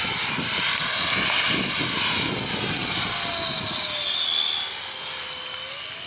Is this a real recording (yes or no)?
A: yes